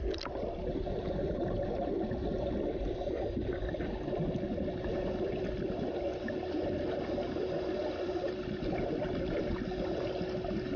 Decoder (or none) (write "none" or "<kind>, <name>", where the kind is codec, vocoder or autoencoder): none